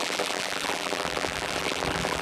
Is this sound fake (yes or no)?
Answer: yes